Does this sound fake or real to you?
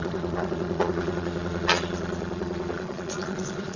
fake